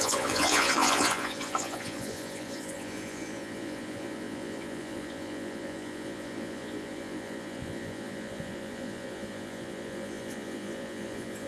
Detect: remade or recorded remade